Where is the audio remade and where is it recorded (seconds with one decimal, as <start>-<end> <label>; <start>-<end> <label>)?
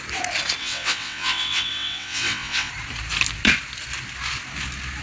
0.0-0.6 recorded; 0.6-2.7 remade; 2.7-5.0 recorded